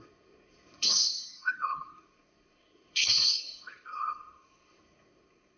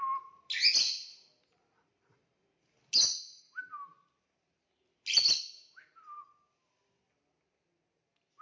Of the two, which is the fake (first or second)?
first